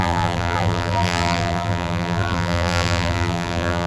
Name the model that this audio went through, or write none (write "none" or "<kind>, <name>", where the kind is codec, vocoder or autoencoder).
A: vocoder, BigVGAN v2